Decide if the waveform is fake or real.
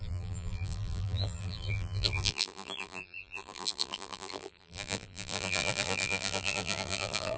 fake